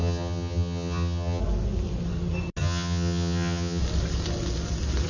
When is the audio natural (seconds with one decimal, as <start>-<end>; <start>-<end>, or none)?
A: 1.4-2.6; 3.8-5.1